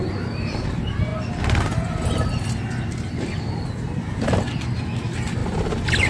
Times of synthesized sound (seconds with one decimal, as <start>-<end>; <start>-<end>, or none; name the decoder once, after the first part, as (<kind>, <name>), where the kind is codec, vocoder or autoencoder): none